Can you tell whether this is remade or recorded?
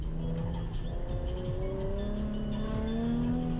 recorded